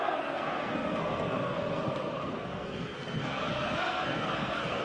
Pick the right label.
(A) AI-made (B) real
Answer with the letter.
A